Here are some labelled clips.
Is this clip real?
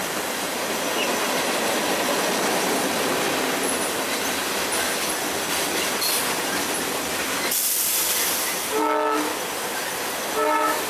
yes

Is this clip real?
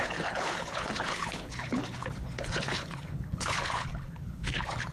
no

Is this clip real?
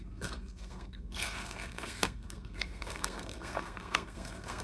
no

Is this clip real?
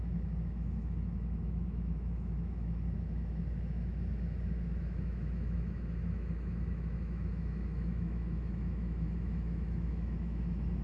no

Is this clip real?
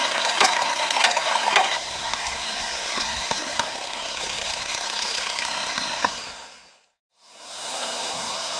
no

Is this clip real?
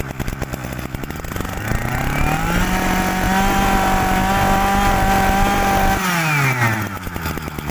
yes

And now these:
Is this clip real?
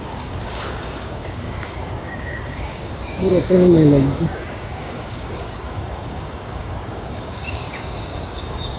no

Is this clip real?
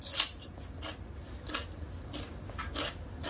yes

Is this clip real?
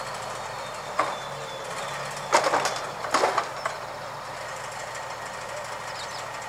yes